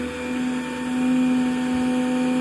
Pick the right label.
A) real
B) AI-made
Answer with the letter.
A